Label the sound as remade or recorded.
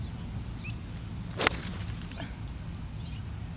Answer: recorded